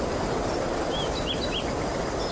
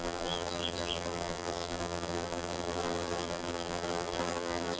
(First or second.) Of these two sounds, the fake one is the second